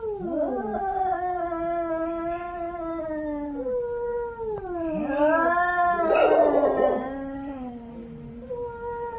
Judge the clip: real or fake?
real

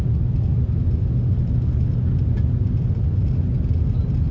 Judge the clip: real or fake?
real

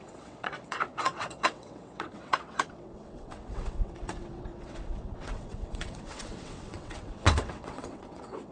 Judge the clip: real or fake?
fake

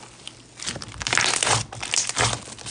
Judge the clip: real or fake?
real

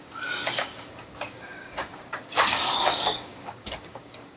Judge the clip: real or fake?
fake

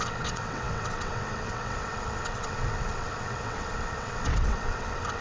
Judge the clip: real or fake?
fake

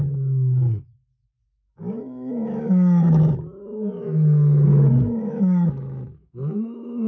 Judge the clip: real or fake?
fake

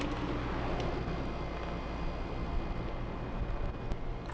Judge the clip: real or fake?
real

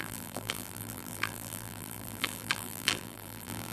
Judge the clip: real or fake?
fake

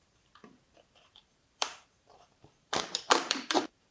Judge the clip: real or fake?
fake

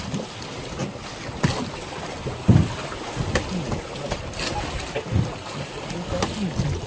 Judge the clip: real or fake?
real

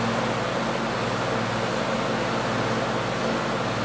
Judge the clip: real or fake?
real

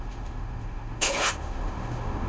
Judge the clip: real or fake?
fake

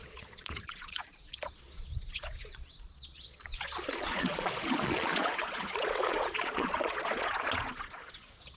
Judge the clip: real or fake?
fake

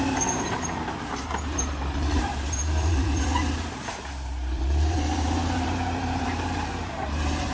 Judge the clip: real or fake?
fake